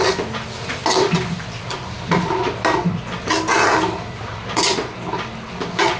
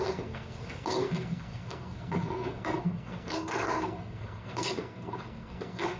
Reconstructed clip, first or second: second